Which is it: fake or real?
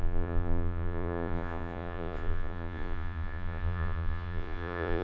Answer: fake